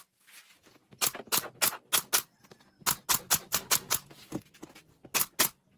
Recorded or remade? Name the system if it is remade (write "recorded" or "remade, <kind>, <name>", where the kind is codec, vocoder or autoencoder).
recorded